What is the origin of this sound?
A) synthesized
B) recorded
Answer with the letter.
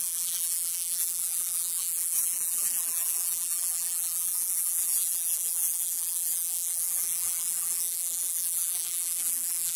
A